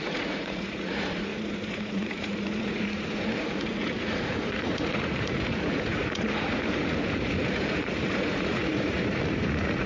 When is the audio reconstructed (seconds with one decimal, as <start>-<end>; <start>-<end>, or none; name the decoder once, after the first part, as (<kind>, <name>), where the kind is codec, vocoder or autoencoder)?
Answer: 0.0-9.9 (vocoder, Vocos)